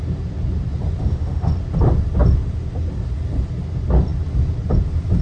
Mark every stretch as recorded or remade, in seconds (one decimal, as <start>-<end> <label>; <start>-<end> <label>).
0.0-1.0 recorded; 1.0-1.5 remade; 1.5-5.2 recorded